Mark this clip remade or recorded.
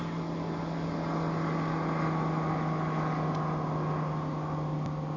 recorded